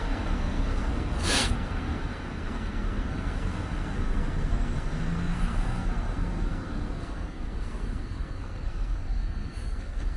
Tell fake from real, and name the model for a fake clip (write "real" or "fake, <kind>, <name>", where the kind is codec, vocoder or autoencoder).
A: fake, codec, SNAC